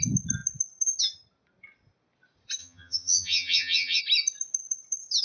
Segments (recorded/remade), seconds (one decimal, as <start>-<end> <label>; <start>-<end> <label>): 0.0-2.6 recorded; 2.6-4.0 remade; 4.0-5.2 recorded

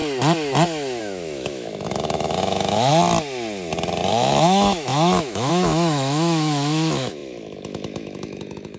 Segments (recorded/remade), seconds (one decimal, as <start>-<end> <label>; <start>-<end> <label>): 0.0-1.0 recorded; 1.0-2.9 remade; 2.9-4.1 recorded; 4.1-8.8 remade

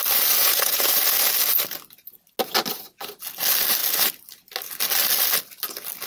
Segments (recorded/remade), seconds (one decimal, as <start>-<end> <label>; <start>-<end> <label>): 0.0-0.4 recorded; 0.4-0.9 remade; 0.9-6.1 recorded

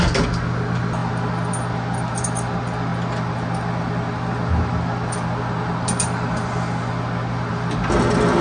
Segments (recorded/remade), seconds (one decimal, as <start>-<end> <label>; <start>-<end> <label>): 0.0-8.4 recorded

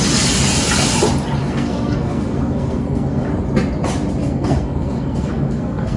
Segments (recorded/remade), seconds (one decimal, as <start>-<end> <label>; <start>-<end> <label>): 0.0-1.4 recorded; 1.4-3.3 remade; 3.3-4.2 recorded; 4.2-6.0 remade

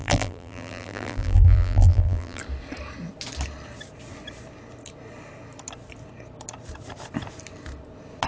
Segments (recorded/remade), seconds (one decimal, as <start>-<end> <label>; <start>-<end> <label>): 0.0-2.4 remade; 2.4-8.3 recorded